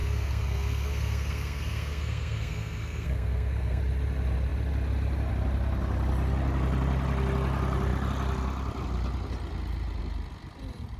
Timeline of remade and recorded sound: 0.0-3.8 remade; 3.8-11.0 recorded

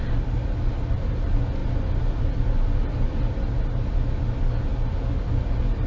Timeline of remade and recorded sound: 0.0-5.9 recorded

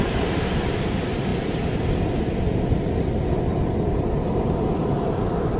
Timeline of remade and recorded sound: 0.0-5.6 recorded